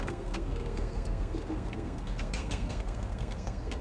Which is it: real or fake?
fake